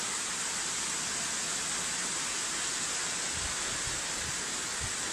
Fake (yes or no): no